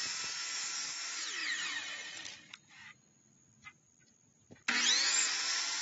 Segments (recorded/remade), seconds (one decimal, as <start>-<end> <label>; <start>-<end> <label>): 0.0-5.8 recorded